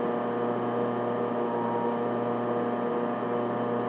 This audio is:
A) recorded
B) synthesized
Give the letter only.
A